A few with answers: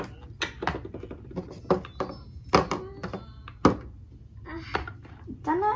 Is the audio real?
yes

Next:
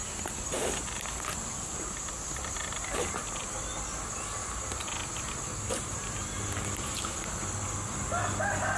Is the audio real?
yes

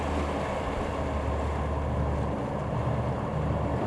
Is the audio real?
no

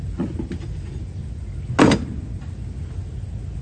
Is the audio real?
yes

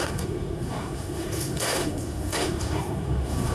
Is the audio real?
no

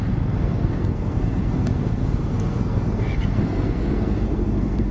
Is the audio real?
no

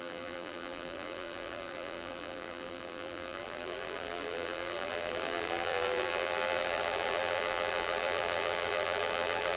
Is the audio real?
no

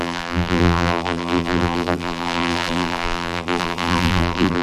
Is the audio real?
no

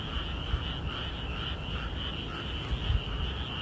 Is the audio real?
yes